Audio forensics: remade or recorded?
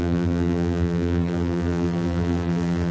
remade